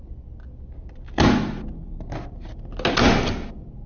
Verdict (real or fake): real